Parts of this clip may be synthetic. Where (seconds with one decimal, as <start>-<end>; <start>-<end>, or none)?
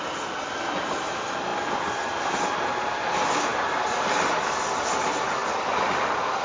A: none